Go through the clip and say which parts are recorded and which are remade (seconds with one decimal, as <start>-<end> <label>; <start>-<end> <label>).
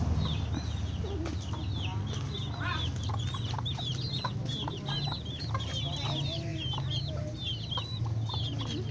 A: 0.0-8.9 recorded